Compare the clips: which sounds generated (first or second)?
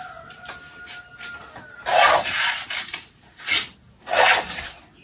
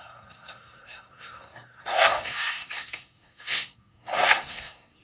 second